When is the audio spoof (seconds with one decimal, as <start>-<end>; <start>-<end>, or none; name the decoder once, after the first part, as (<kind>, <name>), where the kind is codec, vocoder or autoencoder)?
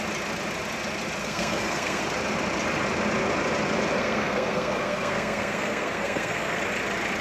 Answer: 1.2-2.0 (codec, SNAC); 4.0-6.6